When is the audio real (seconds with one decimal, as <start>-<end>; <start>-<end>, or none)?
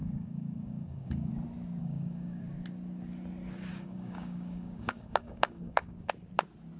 1.3-1.8; 2.4-3.7; 6.1-6.8